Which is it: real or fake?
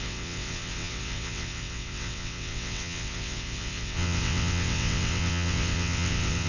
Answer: fake